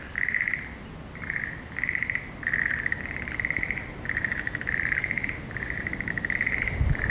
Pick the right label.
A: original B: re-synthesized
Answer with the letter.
A